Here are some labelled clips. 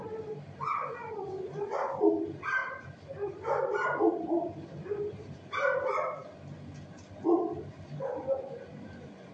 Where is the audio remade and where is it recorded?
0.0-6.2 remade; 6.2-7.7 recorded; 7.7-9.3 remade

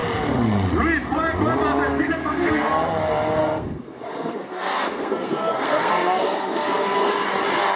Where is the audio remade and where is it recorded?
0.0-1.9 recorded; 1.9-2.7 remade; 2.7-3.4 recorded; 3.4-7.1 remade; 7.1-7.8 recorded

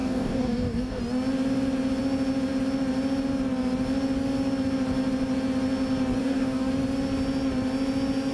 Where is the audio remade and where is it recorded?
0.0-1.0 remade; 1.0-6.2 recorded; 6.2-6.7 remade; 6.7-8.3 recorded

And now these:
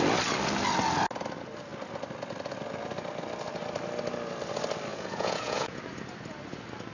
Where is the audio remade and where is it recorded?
0.0-4.9 recorded; 4.9-5.8 remade; 5.8-6.9 recorded

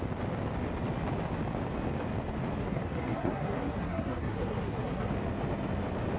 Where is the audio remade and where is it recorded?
0.0-2.6 recorded; 2.6-5.1 remade; 5.1-6.2 recorded

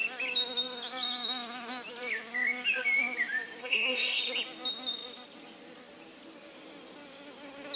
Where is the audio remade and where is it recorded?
0.0-3.6 recorded; 3.6-4.2 remade; 4.2-7.8 recorded